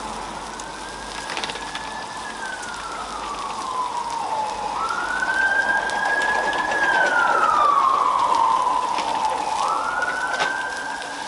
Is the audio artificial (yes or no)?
no